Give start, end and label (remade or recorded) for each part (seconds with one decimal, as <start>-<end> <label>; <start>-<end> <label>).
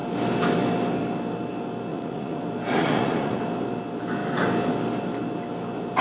0.0-1.9 recorded; 1.9-2.4 remade; 2.4-2.8 recorded; 2.8-3.4 remade; 3.4-6.0 recorded